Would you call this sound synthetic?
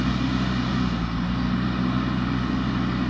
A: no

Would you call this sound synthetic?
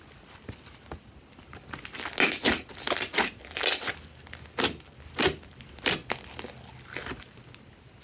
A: no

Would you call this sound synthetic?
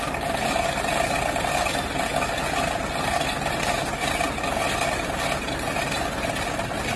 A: no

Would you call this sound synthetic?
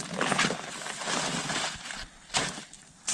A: no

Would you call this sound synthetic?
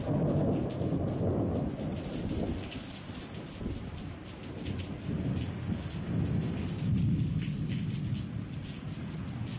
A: no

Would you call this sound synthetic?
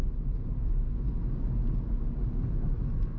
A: no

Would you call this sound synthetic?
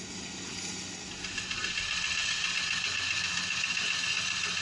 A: no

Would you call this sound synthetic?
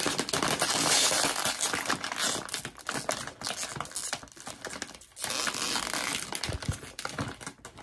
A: no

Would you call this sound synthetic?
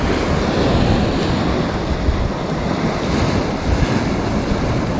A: no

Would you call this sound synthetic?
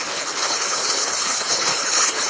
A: yes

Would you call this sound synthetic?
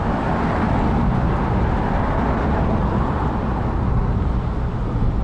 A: no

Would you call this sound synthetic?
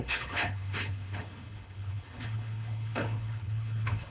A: yes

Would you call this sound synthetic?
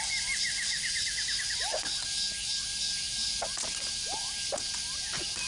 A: no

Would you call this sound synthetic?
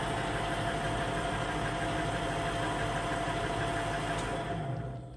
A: no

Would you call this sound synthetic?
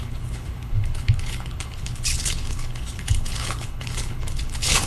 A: yes